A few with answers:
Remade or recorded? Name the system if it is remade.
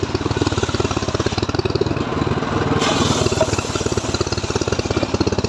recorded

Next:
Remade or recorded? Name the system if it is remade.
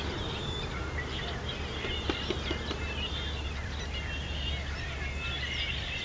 recorded